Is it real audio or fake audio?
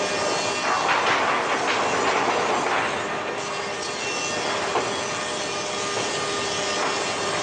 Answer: real